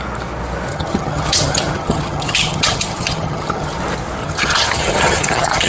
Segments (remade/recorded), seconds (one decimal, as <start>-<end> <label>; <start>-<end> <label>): 0.0-0.7 recorded; 0.7-3.8 remade; 3.8-4.2 recorded; 4.2-5.7 remade